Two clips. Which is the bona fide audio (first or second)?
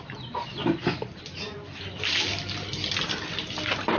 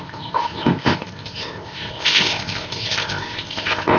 first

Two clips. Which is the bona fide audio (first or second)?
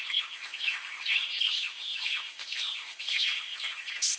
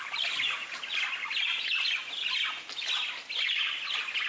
second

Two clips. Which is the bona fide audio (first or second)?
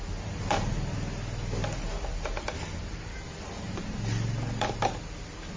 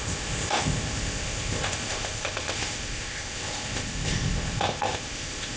first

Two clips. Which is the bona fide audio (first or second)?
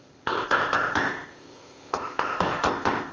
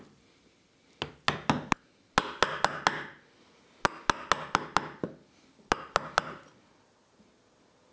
second